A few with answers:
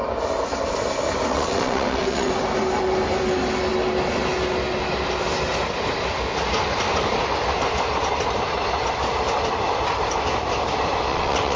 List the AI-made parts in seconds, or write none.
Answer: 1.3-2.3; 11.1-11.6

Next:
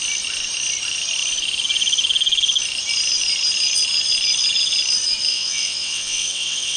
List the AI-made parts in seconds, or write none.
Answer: 5.3-6.8

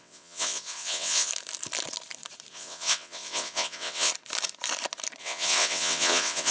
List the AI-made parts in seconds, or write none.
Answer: 0.0-1.3; 2.5-4.1; 5.2-6.5

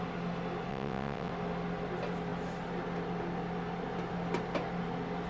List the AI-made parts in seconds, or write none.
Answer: 0.7-1.3